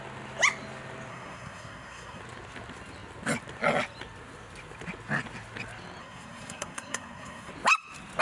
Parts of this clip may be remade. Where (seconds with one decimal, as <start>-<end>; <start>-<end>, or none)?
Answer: 1.1-2.2; 6.0-7.5